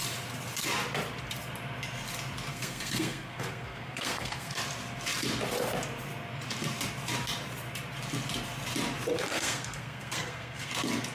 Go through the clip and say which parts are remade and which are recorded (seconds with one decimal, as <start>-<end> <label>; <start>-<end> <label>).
0.0-2.5 recorded; 2.5-4.6 remade; 4.6-9.3 recorded; 9.3-10.7 remade; 10.7-11.1 recorded